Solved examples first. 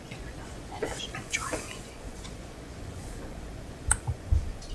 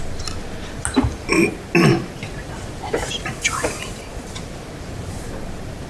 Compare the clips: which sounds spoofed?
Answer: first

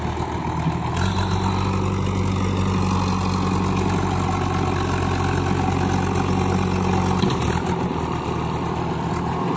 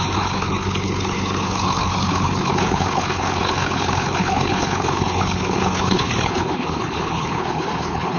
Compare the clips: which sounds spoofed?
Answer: second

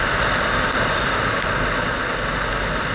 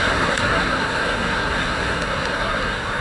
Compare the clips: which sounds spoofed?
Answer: second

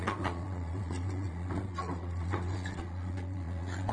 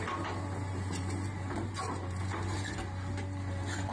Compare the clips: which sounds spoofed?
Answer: first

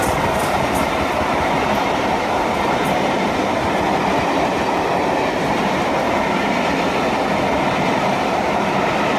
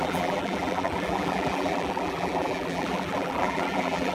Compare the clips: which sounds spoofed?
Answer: second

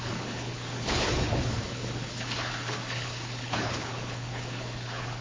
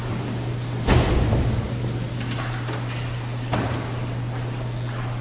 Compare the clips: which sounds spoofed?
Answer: first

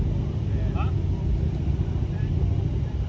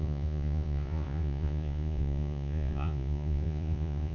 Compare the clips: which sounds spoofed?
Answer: second